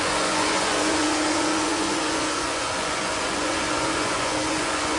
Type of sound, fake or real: fake